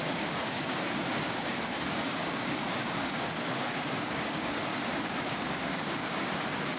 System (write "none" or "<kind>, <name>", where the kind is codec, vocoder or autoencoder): codec, DAC